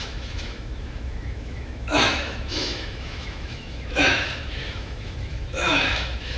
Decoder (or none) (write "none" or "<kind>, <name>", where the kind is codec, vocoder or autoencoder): autoencoder, DAC-VAE